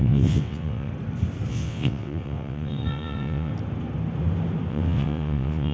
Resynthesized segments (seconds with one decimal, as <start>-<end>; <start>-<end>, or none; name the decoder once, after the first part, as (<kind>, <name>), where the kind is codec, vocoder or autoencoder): 0.0-0.9 (vocoder, WaveNeXt); 1.5-3.5; 4.7-5.7